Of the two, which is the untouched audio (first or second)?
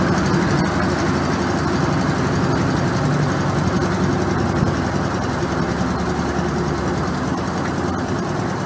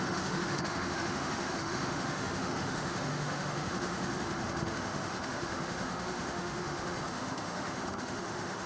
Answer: first